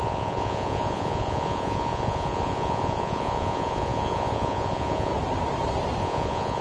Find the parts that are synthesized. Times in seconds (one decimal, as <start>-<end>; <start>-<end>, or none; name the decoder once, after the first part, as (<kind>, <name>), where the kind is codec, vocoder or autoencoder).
0.0-5.1 (vocoder, Vocos); 6.0-6.6

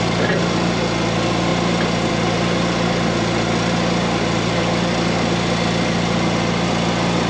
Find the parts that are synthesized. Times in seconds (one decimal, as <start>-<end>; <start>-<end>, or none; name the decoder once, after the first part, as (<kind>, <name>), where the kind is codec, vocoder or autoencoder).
none